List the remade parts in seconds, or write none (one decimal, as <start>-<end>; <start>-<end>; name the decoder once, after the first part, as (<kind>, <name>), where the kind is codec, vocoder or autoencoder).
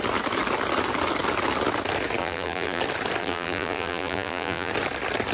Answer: 2.2-2.8 (vocoder, BigVGAN v2); 3.2-4.7